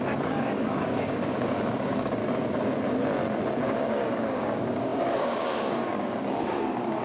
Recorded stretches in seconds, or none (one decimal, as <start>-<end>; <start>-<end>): 2.2-3.6